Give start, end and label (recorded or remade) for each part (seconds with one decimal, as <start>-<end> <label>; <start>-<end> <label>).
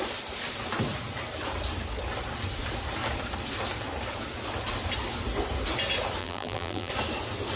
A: 0.0-6.2 recorded; 6.2-6.9 remade; 6.9-7.6 recorded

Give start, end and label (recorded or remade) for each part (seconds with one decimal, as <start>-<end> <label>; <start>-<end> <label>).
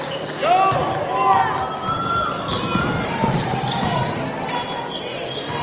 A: 0.0-0.4 remade; 0.4-2.8 recorded; 2.8-4.0 remade; 4.0-5.6 recorded